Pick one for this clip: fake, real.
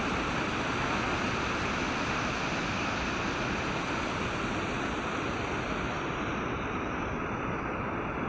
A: real